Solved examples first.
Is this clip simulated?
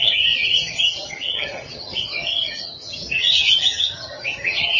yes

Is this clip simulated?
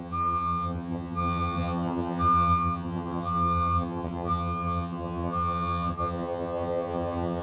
yes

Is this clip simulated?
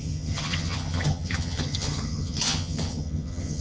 yes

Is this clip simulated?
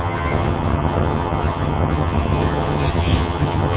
yes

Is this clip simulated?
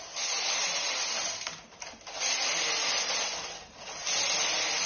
no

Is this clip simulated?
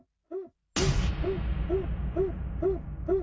no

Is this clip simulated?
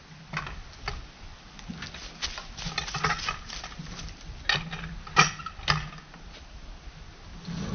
no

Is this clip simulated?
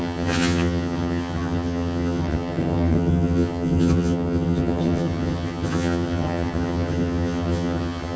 yes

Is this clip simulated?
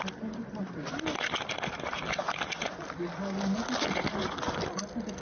no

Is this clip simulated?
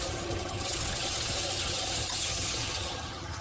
yes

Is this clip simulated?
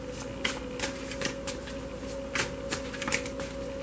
no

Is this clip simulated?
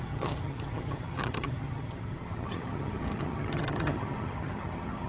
yes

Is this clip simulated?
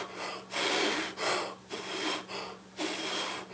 no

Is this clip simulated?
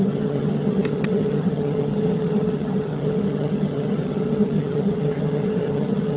yes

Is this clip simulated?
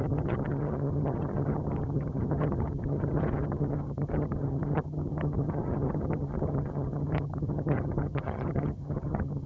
yes